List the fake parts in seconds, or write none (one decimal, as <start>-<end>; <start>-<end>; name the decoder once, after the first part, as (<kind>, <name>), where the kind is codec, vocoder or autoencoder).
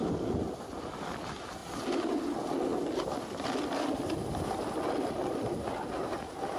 none